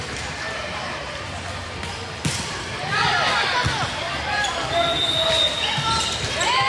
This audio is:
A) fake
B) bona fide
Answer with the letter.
A